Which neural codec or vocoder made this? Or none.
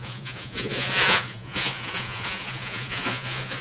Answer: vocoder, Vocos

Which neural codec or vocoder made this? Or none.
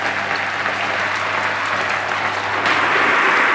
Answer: none